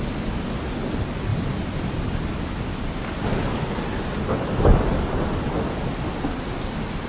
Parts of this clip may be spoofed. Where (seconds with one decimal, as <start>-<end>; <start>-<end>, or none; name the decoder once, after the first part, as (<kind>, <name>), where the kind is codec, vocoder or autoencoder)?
1.3-3.3 (vocoder, BigVGAN v2)